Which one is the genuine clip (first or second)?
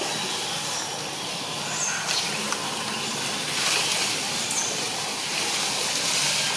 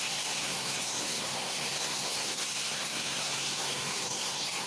first